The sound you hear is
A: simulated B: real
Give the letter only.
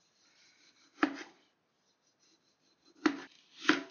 B